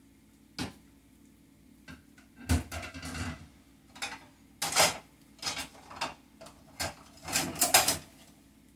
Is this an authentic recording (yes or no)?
yes